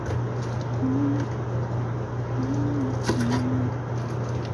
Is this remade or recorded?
recorded